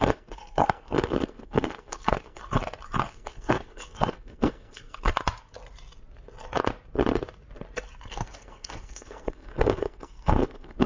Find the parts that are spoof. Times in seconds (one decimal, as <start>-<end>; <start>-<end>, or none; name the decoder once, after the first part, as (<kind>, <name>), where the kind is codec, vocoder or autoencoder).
0.0-2.4 (codec, SNAC); 3.0-5.1; 8.1-10.9